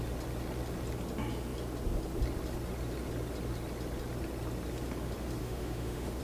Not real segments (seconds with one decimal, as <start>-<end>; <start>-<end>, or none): 5.4-6.2